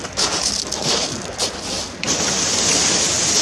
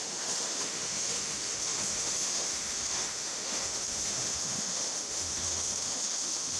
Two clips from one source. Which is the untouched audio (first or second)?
first